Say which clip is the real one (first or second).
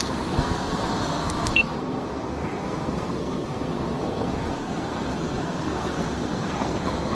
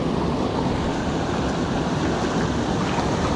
second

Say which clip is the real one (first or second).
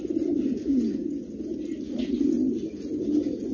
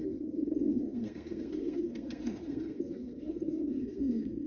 first